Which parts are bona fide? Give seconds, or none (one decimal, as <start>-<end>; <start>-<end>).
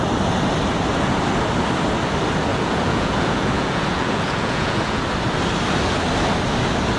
0.0-2.5; 5.0-7.0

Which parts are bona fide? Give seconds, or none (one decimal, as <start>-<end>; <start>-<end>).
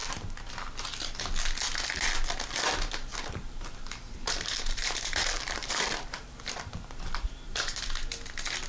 0.0-3.1; 7.8-8.7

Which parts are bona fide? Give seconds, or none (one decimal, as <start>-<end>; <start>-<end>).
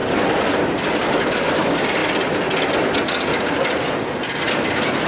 0.0-5.1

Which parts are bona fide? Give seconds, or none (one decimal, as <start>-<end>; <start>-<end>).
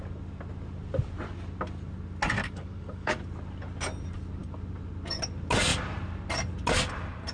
0.0-2.4; 3.2-7.3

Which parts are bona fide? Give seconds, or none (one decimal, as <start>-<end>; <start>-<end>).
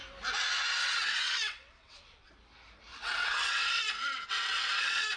0.0-0.8; 2.3-2.9